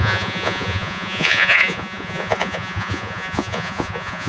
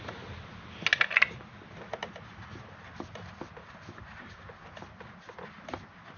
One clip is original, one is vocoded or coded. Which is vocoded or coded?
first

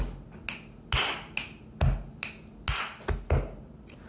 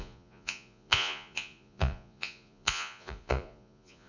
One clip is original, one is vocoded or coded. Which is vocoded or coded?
second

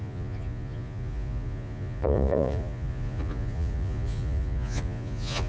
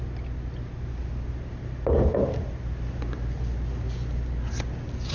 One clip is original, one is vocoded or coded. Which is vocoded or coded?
first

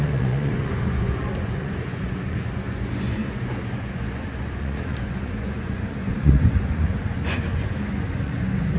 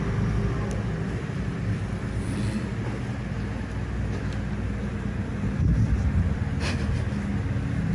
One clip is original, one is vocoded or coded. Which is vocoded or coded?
first